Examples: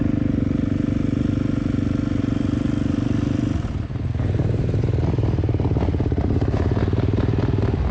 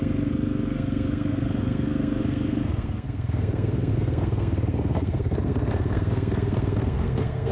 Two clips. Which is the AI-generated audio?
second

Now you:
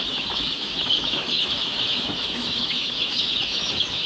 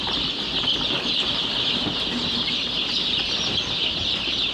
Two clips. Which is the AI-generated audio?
first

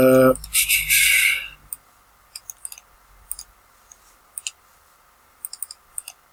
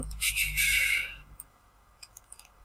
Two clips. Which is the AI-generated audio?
second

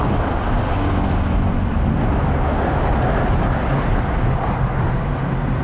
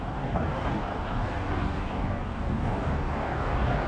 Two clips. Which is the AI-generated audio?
second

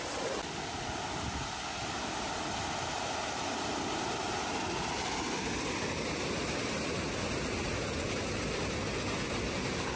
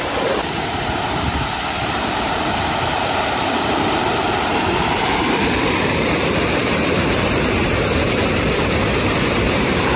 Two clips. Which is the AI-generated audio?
second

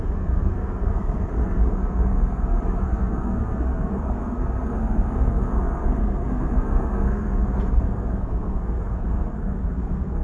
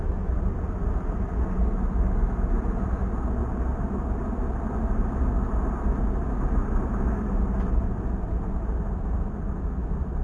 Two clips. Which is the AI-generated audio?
first